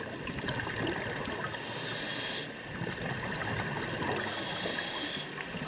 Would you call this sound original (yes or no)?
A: yes